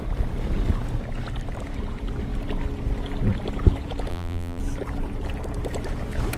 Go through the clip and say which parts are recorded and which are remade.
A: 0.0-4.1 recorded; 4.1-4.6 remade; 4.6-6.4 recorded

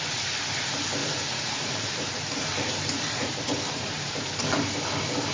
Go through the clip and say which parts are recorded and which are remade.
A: 0.0-1.0 recorded; 1.0-4.2 remade; 4.2-5.3 recorded

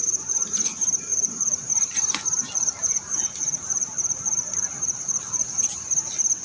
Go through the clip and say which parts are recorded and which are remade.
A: 0.0-0.5 remade; 0.5-1.1 recorded; 1.1-1.9 remade; 1.9-2.4 recorded; 2.4-5.8 remade; 5.8-6.4 recorded

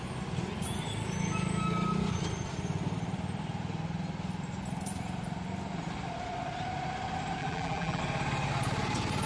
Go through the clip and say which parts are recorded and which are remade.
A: 0.0-7.4 recorded; 7.4-8.0 remade; 8.0-9.3 recorded